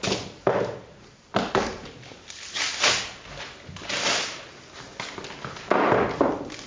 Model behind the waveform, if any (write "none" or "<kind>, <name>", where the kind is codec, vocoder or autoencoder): none